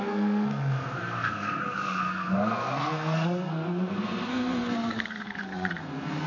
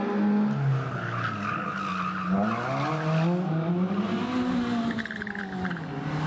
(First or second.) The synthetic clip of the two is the first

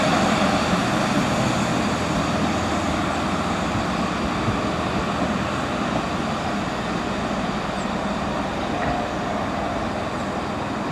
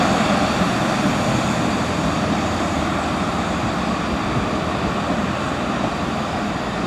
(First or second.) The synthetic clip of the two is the second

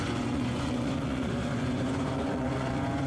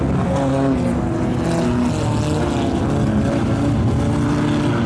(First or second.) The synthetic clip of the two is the first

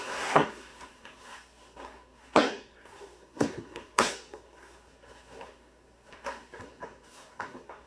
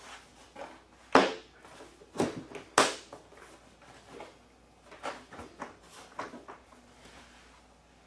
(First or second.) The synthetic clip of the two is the first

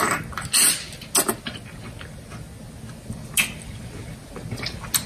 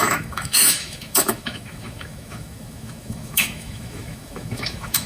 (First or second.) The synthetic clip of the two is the second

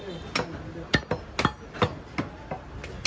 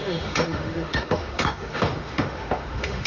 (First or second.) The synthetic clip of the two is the second